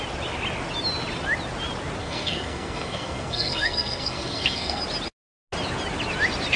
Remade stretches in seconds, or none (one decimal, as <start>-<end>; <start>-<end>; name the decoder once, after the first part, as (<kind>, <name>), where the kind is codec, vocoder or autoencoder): 2.0-4.8 (codec, SNAC)